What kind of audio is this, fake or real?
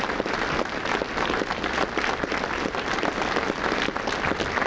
real